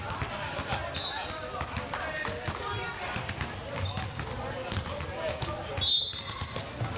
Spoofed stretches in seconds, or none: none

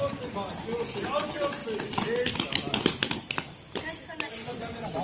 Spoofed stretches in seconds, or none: none

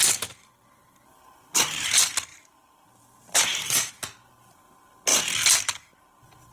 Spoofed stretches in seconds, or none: 2.3-3.9 (vocoder, BigVGAN v2)